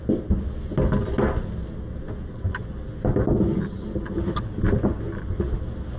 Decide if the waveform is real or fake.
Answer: real